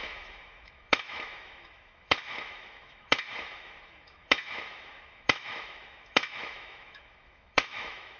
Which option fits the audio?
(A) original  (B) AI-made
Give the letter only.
B